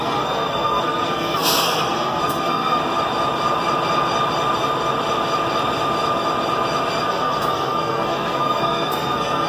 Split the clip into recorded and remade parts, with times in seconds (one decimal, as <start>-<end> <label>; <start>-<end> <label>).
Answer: 0.0-2.8 remade; 2.8-7.1 recorded; 7.1-9.5 remade